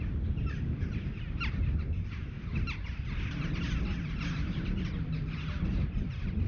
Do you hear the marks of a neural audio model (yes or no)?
no